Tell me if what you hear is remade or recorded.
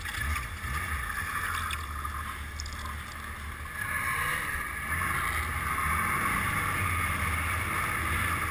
recorded